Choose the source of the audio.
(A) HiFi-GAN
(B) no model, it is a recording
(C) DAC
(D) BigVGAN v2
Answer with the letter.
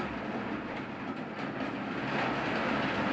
B